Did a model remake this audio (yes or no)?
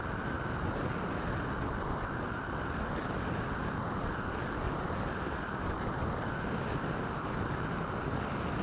no